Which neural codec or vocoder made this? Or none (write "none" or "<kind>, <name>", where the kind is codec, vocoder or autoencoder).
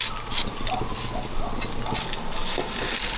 none